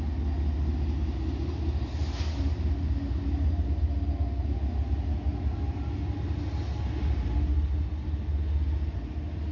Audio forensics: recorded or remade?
recorded